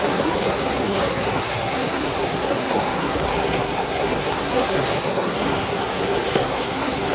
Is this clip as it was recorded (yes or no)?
no